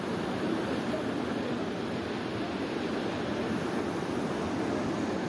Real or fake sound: real